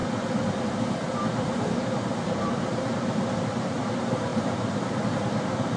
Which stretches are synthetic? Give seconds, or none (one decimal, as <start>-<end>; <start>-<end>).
0.6-5.8